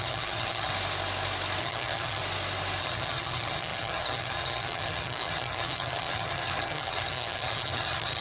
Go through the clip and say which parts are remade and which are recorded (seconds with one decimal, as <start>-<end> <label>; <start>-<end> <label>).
0.0-0.7 remade; 0.7-1.6 recorded; 1.6-2.2 remade; 2.2-2.8 recorded; 2.8-8.2 remade